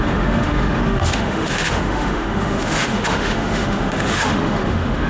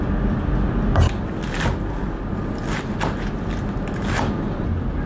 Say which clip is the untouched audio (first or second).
second